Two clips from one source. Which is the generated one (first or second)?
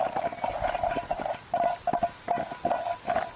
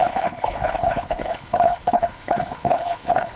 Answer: second